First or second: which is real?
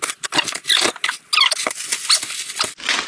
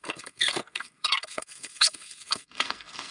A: first